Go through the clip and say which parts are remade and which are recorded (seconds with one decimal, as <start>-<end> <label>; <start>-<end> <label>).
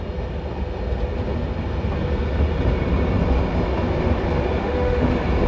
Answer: 0.0-4.6 recorded; 4.6-5.1 remade; 5.1-5.5 recorded